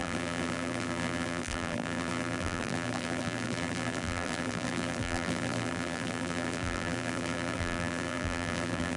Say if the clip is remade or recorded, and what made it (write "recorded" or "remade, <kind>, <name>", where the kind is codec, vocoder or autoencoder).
remade, vocoder, BigVGAN v2